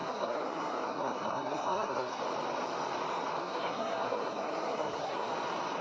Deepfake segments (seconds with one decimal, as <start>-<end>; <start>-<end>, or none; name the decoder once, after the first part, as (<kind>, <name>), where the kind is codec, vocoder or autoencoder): 0.0-2.2 (codec, SNAC); 3.4-5.3